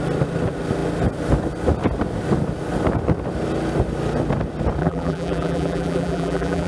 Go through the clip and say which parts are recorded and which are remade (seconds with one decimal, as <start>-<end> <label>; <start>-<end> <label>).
0.0-4.8 recorded; 4.8-6.7 remade